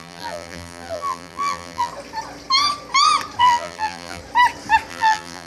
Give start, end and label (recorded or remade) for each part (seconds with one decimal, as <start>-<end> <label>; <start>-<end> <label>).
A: 0.0-1.9 remade; 1.9-3.4 recorded; 3.4-4.2 remade; 4.2-4.9 recorded; 4.9-5.5 remade